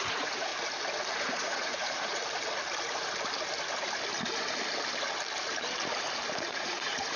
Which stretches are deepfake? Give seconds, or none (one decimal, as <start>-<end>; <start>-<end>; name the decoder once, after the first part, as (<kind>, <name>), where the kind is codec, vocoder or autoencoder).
0.0-0.5 (vocoder, Vocos); 1.2-2.2; 6.5-7.2